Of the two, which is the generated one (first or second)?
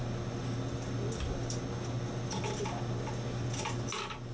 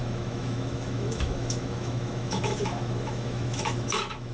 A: second